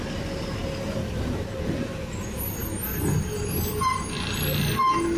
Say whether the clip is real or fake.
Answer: real